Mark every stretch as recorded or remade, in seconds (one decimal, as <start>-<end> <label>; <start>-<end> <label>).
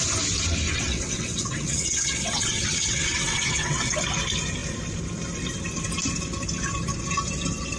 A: 0.0-0.7 recorded; 0.7-4.0 remade; 4.0-7.8 recorded